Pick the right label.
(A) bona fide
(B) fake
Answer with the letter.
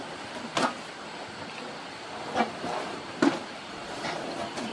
A